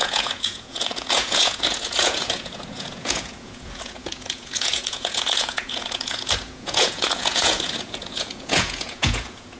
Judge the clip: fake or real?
fake